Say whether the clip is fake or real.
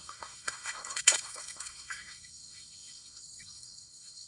fake